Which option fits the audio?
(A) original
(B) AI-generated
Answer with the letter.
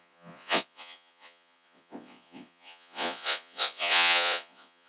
B